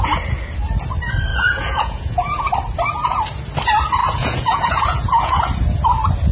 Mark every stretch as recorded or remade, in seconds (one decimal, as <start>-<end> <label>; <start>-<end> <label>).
0.0-1.3 recorded; 1.3-2.4 remade; 2.4-4.0 recorded; 4.0-5.4 remade; 5.4-6.3 recorded